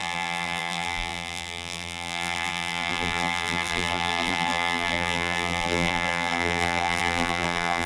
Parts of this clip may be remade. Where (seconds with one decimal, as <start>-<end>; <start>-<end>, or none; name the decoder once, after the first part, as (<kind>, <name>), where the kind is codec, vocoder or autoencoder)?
0.0-7.9 (vocoder, BigVGAN v2)